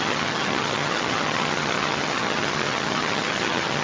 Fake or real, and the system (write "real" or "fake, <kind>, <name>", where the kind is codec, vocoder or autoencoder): fake, vocoder, HiFi-GAN